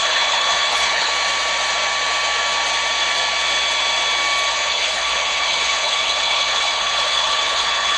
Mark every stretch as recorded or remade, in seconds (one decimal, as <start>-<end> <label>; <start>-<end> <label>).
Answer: 0.0-1.1 remade; 1.1-4.5 recorded; 4.5-8.0 remade